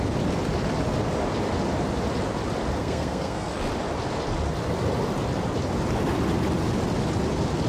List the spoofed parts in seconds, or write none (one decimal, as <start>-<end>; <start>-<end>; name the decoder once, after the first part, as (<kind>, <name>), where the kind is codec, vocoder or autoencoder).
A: 2.8-3.5 (codec, SNAC)